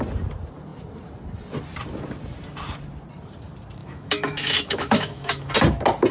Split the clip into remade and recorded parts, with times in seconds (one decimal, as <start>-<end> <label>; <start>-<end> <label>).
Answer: 0.0-3.8 recorded; 3.8-5.5 remade; 5.5-6.1 recorded